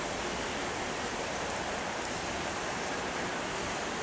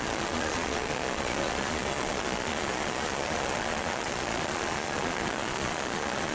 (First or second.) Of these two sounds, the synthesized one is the second